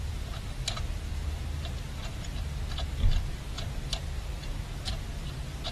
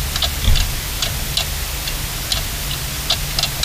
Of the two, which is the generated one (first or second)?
first